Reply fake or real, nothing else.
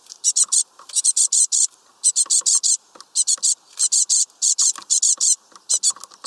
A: real